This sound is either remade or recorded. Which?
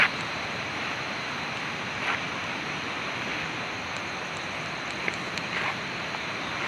recorded